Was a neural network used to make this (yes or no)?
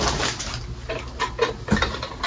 no